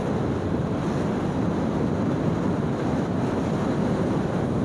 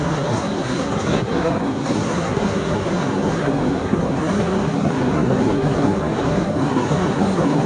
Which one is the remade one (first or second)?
second